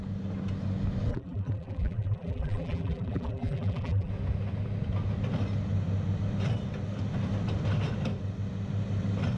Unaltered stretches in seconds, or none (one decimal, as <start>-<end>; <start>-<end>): 0.0-1.1; 4.1-9.4